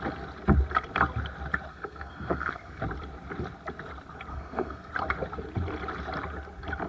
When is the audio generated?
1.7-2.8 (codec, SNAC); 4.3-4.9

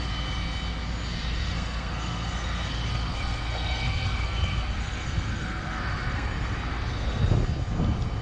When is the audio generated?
1.4-6.3 (codec, SNAC); 6.7-7.3

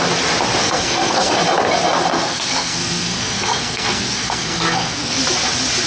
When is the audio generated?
0.6-1.4 (codec, SNAC); 2.1-5.2